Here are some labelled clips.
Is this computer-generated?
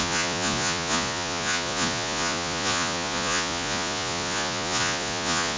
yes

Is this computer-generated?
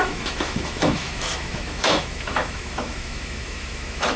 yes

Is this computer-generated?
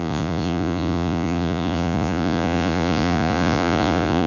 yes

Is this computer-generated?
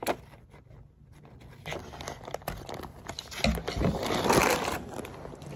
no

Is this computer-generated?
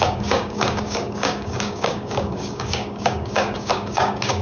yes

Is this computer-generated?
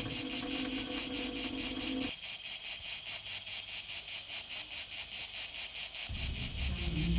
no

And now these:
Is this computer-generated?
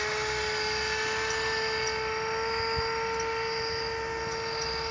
no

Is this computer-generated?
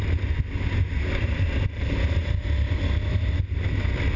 no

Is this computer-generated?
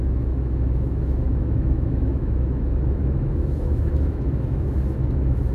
yes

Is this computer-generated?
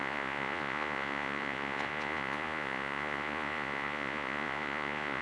yes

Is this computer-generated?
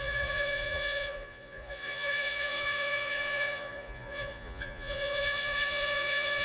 yes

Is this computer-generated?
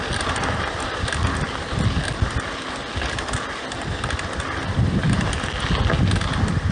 no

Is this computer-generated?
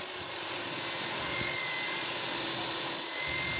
no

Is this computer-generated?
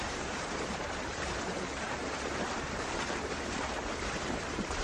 yes